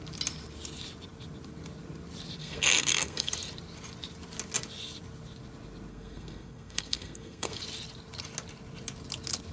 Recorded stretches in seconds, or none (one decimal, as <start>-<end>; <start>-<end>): 0.0-2.4; 3.3-5.9; 7.6-9.5

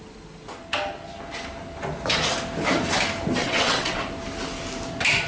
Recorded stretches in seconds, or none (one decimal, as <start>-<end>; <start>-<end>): 0.0-3.4; 4.0-5.3

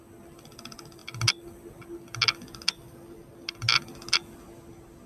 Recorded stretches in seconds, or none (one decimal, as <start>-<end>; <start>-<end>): 0.0-5.1

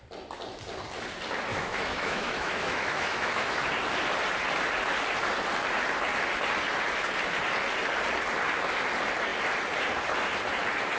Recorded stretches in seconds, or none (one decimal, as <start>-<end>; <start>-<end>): 0.0-1.5; 3.6-11.0

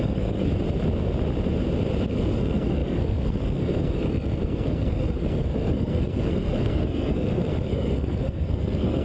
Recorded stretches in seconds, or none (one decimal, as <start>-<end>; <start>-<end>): 0.5-2.1

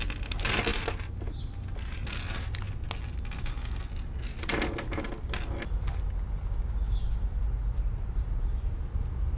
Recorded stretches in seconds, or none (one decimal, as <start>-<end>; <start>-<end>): 0.0-9.4